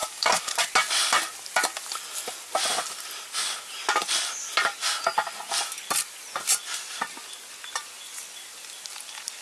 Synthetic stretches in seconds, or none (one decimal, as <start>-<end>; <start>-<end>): 0.0-0.7